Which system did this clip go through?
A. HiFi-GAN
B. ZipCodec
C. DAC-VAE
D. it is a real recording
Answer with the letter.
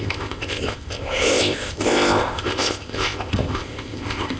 B